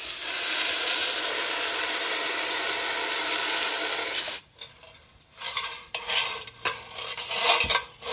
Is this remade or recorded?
remade